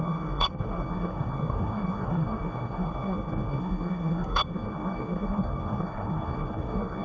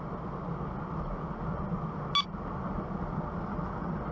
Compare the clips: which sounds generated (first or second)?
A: first